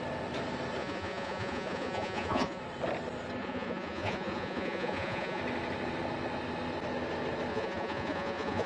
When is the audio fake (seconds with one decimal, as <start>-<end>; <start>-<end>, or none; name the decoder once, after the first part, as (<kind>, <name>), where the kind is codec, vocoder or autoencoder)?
0.8-2.6 (vocoder, Vocos); 3.4-5.4; 7.5-8.7

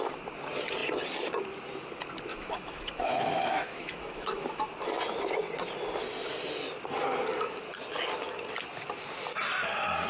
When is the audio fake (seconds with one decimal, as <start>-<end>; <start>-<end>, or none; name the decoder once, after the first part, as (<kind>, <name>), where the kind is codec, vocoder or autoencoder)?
2.3-4.7 (autoencoder, DAC-VAE)

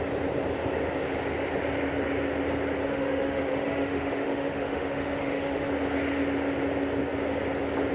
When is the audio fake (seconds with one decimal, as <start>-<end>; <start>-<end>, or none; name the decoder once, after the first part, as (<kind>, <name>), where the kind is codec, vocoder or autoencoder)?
2.8-5.7 (autoencoder, DAC-VAE)

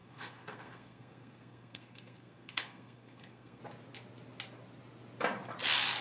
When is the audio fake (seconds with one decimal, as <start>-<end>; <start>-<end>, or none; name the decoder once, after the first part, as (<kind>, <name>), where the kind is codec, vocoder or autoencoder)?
0.0-3.6 (codec, SNAC)

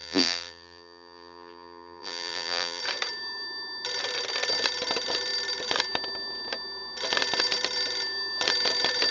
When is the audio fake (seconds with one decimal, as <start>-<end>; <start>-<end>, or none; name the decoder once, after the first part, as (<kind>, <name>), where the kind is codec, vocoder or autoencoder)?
0.0-2.8 (vocoder, BigVGAN v2)

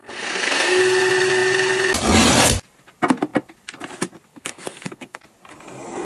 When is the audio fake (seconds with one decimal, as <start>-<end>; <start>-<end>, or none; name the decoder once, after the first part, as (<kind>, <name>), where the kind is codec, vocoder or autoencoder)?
0.0-0.8 (codec, SNAC); 4.3-5.2

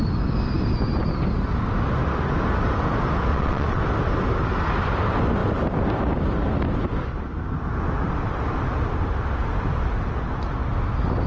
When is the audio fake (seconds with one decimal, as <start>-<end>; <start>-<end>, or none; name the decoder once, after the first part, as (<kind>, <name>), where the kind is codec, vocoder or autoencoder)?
3.3-3.8 (vocoder, WaveNeXt)

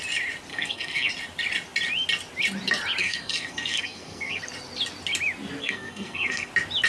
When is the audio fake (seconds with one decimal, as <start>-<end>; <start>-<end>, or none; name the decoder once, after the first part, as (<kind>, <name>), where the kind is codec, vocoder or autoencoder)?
0.5-1.1 (codec, SNAC); 3.0-4.4; 5.6-6.5